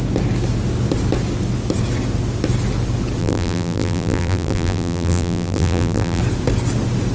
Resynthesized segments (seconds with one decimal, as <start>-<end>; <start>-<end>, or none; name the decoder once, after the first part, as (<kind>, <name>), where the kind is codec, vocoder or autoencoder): 3.2-6.2 (vocoder, BigVGAN v2)